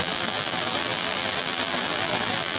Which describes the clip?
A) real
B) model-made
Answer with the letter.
B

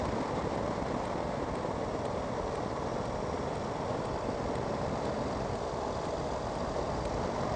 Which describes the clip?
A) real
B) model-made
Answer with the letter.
A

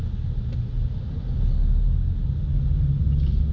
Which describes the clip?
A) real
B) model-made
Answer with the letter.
A